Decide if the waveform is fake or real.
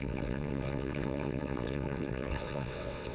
fake